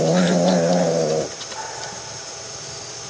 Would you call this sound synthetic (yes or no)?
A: no